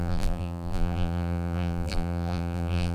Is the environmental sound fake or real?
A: fake